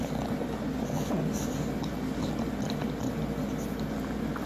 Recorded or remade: recorded